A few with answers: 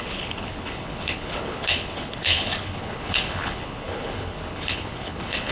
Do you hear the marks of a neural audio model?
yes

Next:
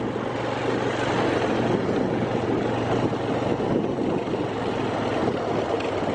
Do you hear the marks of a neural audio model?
no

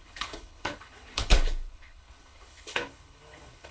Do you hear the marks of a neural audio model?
yes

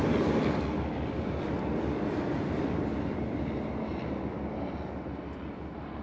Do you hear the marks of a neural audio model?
no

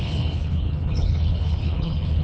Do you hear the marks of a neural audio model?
yes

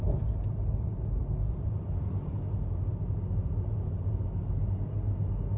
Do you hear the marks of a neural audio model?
no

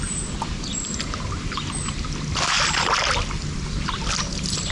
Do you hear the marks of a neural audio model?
no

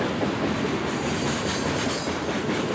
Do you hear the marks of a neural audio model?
no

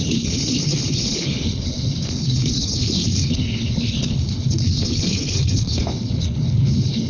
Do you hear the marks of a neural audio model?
yes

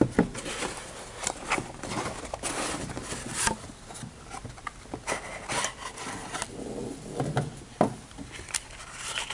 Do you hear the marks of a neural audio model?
no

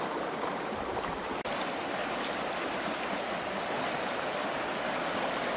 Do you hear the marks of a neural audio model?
no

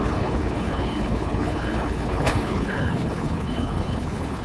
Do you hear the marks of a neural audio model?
yes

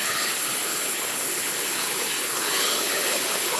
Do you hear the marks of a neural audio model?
yes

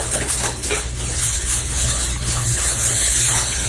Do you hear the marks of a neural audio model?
yes